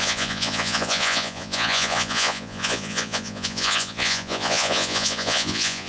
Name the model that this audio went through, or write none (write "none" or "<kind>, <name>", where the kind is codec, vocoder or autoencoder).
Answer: vocoder, Vocos